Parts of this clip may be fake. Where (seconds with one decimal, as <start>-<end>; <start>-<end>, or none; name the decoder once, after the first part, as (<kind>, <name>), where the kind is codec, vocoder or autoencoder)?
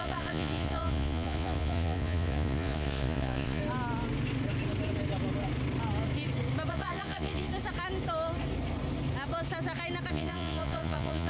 0.0-3.6 (vocoder, Vocos); 6.7-7.5; 10.1-11.3